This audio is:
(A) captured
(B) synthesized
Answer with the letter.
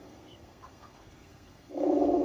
B